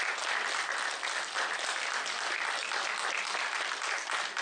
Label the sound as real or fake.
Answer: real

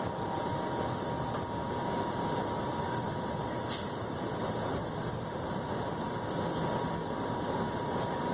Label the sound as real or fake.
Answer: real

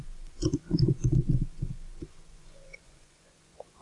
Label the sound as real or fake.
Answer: fake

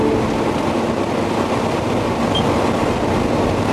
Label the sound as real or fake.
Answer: real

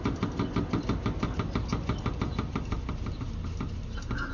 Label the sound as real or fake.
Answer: real